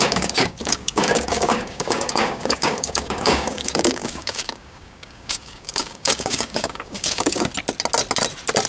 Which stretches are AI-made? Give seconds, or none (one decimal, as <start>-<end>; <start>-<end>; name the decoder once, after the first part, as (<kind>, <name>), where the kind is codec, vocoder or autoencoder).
0.0-7.5 (codec, DAC)